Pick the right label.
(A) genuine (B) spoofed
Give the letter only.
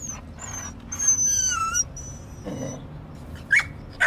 A